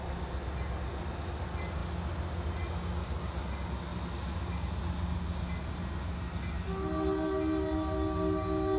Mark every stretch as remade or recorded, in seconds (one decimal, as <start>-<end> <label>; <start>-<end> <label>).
0.0-8.8 recorded